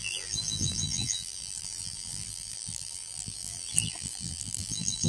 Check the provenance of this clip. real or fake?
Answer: fake